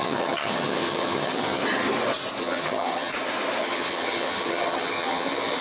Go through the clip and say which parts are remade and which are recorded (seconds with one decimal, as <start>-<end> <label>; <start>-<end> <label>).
0.0-1.6 remade; 1.6-2.4 recorded; 2.4-3.1 remade; 3.1-3.6 recorded; 3.6-5.6 remade